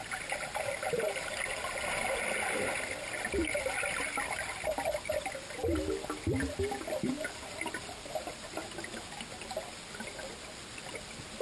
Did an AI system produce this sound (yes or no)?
no